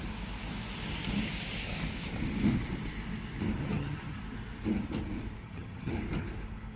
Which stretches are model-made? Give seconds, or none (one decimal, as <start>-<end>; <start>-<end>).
3.6-4.2; 5.4-5.9